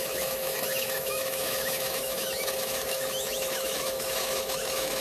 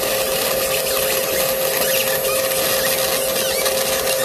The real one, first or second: second